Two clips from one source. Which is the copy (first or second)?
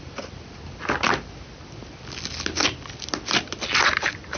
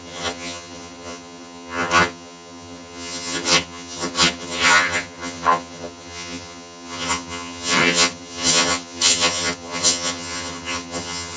second